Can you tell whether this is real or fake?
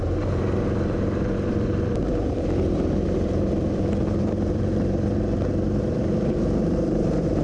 fake